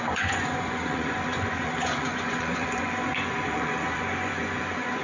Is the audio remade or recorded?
remade